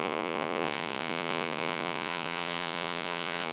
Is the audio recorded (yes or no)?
no